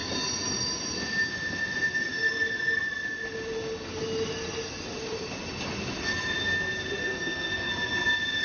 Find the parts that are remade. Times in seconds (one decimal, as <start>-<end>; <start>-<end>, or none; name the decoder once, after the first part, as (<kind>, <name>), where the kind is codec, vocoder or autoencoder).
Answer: 7.0-7.7 (codec, SNAC)